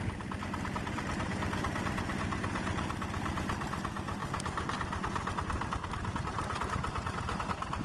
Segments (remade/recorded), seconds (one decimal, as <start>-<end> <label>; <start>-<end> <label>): 0.0-7.8 recorded